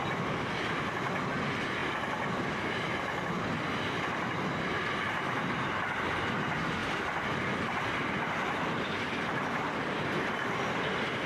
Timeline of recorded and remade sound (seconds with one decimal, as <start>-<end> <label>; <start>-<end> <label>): 0.0-11.3 recorded